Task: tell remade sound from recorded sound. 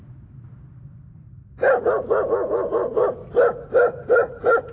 recorded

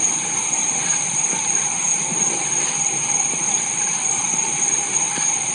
recorded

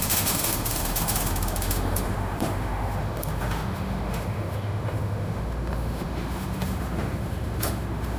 remade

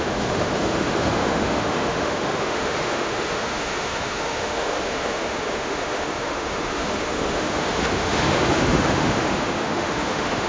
remade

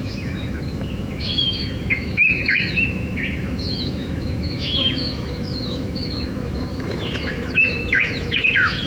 remade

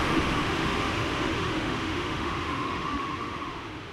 remade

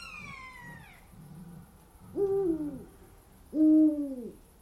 recorded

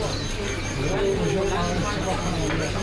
recorded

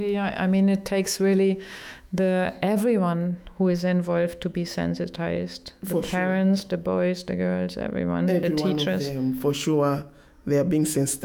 remade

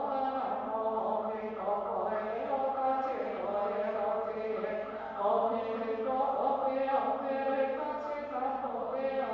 recorded